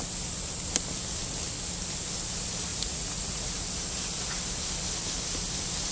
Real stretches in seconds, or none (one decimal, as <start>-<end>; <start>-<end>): 0.0-2.7; 3.4-5.9